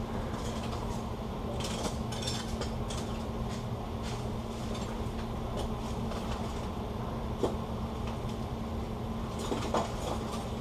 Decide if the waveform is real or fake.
real